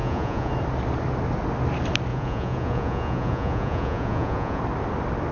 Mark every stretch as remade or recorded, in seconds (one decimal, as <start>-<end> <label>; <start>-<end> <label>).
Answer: 0.0-0.5 remade; 0.5-2.1 recorded; 2.1-4.6 remade; 4.6-5.3 recorded